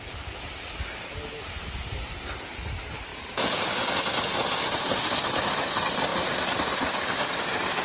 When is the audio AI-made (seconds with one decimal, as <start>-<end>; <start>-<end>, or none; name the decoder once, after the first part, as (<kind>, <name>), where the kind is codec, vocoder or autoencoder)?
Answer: 3.1-3.6 (vocoder, Vocos)